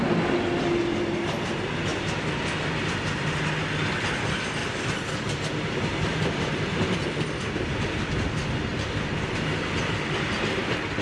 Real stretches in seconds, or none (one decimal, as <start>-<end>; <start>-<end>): 0.0-4.6; 5.4-11.0